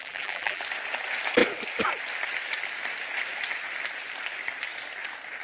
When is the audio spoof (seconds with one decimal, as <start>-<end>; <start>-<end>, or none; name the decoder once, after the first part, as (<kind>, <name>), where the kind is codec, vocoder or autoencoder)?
0.0-0.6 (vocoder, BigVGAN v2)